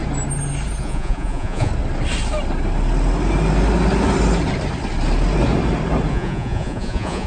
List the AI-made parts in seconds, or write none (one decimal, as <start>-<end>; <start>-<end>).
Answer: 0.8-1.7; 6.1-7.3